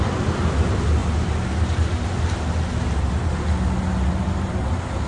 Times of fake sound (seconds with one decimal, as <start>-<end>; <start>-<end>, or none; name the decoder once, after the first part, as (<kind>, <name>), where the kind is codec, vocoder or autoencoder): none